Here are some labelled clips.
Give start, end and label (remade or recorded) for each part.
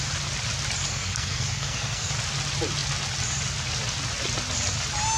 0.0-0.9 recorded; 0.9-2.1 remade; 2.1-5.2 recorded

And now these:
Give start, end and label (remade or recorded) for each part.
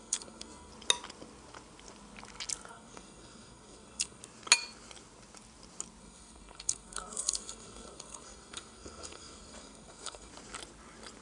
0.0-0.7 remade; 0.7-2.7 recorded; 2.7-4.2 remade; 4.2-6.0 recorded; 6.0-10.3 remade; 10.3-11.2 recorded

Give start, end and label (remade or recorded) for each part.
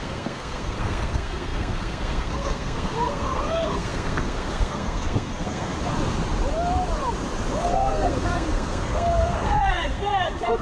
0.0-5.7 remade; 5.7-7.6 recorded; 7.6-10.6 remade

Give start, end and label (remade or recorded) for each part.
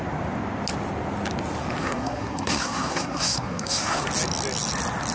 0.0-1.8 recorded; 1.8-4.0 remade; 4.0-5.1 recorded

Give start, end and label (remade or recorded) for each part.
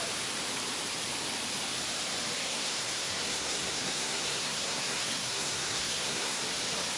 0.0-2.4 recorded; 2.4-6.4 remade; 6.4-7.0 recorded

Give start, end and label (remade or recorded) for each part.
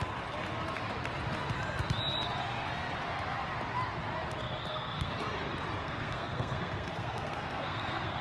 0.0-4.4 recorded; 4.4-5.1 remade; 5.1-5.8 recorded; 5.8-8.2 remade